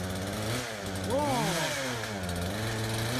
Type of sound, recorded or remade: recorded